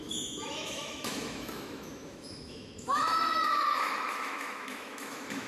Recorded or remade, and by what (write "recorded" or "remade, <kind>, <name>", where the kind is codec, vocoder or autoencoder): remade, autoencoder, DAC-VAE